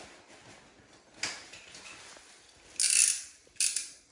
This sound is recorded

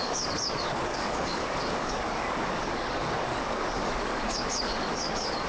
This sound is remade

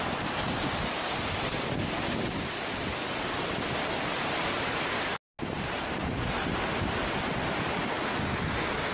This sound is recorded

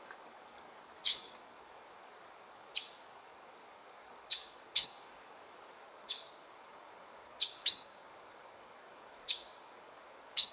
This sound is remade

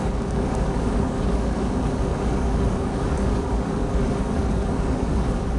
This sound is remade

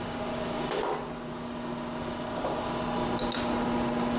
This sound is recorded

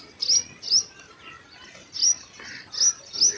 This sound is recorded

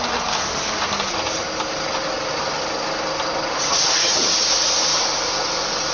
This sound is recorded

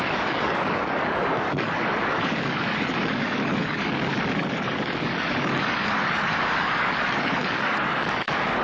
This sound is remade